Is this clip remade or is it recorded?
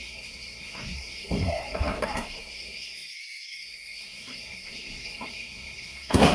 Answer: remade